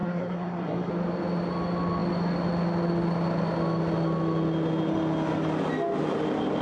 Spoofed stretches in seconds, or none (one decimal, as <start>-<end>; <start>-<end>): 0.0-0.9